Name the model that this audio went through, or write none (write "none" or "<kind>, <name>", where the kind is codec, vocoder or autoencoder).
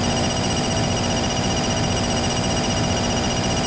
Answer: none